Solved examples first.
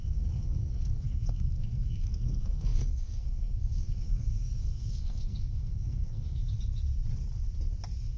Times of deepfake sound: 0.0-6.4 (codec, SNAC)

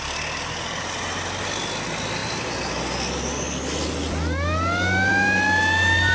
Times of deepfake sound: none

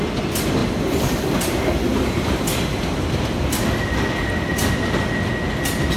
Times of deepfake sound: 1.9-2.9 (vocoder, BigVGAN v2)

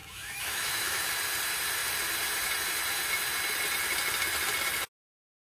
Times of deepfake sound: 0.0-1.1 (autoencoder, DAC-VAE)

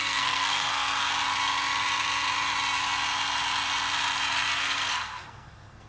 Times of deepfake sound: 0.0-1.1 (codec, SNAC); 4.6-5.9

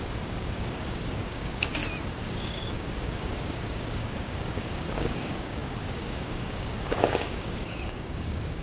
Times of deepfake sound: 0.0-1.8 (codec, DAC); 2.3-8.6

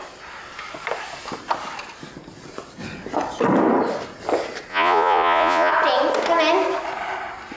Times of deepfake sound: 4.7-5.7 (vocoder, Vocos)